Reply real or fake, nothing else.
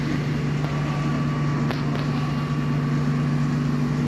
real